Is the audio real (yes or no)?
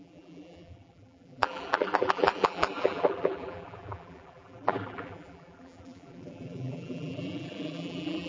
no